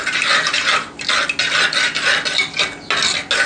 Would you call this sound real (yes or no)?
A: yes